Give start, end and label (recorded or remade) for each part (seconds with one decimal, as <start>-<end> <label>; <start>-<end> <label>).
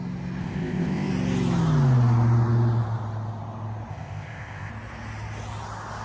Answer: 0.0-0.4 recorded; 0.4-1.1 remade; 1.1-3.9 recorded; 3.9-4.7 remade; 4.7-6.0 recorded